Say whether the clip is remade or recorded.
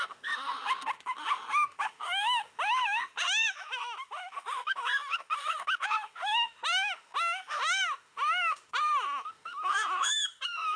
remade